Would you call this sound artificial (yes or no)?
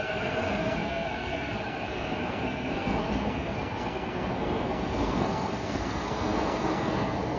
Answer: yes